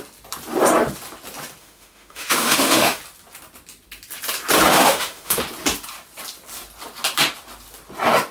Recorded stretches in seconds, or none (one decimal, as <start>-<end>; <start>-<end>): 0.0-1.6; 3.0-4.7; 5.4-8.3